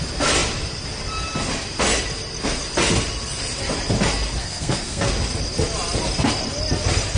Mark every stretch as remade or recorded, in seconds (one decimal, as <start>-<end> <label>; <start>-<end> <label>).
0.0-4.4 recorded; 4.4-5.1 remade; 5.1-7.2 recorded